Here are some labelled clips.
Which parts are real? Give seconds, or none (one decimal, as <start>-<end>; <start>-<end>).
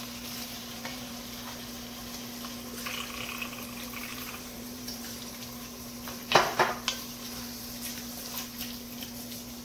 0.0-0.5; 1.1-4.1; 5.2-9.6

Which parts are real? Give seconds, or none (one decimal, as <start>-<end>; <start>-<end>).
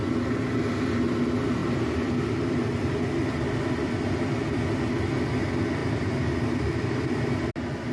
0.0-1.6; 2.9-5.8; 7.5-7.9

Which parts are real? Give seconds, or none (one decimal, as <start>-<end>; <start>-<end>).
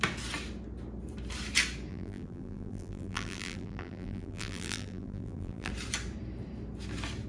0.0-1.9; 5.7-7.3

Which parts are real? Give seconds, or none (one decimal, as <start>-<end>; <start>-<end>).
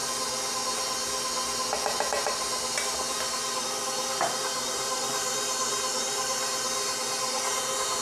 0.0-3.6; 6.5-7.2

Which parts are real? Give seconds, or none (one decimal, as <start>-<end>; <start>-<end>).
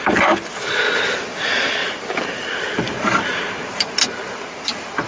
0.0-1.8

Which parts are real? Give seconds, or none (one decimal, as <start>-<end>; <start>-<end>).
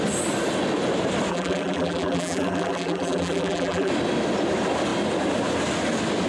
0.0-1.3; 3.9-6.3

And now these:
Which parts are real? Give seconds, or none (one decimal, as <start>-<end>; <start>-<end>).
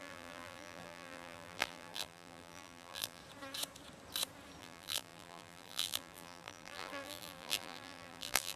3.2-4.6